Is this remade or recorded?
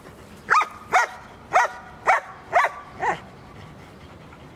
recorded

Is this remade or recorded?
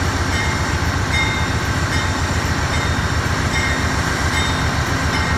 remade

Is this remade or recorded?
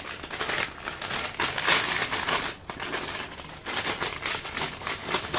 recorded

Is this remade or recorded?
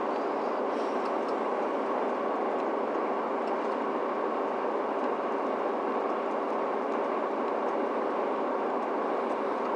recorded